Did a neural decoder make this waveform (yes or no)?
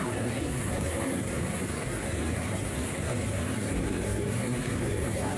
yes